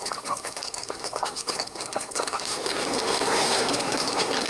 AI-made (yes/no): yes